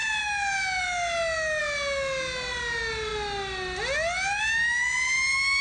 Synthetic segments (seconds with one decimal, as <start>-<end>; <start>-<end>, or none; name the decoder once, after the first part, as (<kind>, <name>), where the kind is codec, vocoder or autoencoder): none